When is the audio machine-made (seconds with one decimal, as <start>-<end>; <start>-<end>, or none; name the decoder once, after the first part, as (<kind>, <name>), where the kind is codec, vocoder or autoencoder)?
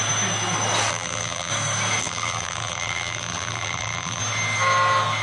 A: 0.9-1.5 (vocoder, BigVGAN v2); 2.0-4.2